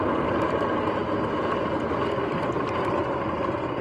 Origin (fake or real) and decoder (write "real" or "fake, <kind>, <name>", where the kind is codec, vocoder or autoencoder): real